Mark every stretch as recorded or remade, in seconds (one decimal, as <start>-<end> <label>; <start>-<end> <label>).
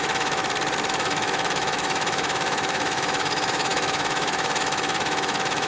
0.0-0.4 remade; 0.4-0.9 recorded; 0.9-5.7 remade